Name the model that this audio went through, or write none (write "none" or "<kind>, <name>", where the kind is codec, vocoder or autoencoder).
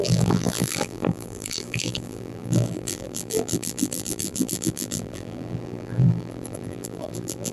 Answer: vocoder, BigVGAN v2